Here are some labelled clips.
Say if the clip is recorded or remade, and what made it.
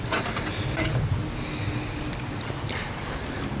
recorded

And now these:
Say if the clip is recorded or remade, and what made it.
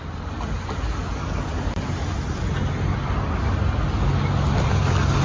recorded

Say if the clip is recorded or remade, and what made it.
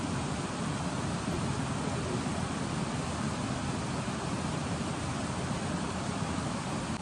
remade, vocoder, BigVGAN v2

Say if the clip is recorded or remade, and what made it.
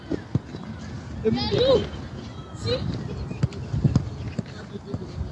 recorded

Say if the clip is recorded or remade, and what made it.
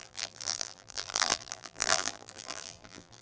remade, vocoder, BigVGAN v2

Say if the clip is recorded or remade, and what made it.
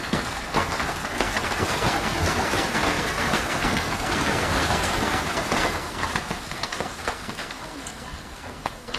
remade, codec, SNAC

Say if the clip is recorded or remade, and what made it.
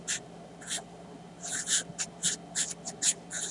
recorded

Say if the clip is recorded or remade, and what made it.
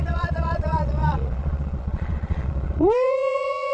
remade, vocoder, Vocos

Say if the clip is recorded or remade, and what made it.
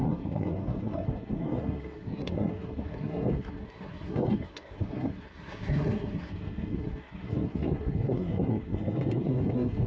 remade, codec, SNAC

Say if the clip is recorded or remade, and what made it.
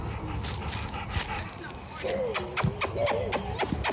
recorded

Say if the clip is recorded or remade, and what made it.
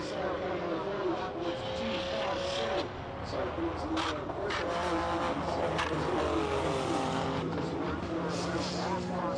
recorded